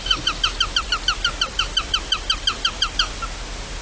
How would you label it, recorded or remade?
recorded